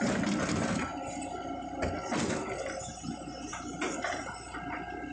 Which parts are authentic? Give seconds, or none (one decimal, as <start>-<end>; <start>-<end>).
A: 0.0-5.1